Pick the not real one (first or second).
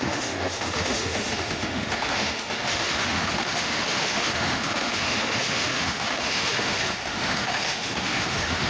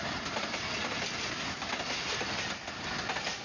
first